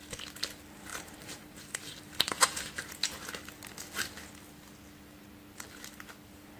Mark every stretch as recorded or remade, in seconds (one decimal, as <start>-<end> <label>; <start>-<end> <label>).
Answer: 0.0-0.9 recorded; 0.9-2.9 remade; 2.9-6.6 recorded